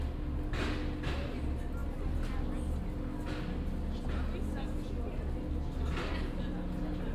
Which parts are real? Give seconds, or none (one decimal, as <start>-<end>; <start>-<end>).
0.0-7.1